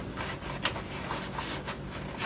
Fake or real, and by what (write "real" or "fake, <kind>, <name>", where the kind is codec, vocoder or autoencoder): real